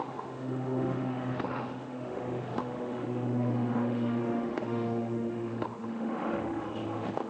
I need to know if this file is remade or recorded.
remade